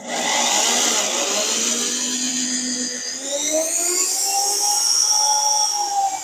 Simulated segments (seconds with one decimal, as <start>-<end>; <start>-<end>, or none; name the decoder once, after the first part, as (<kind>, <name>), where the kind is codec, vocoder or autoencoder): none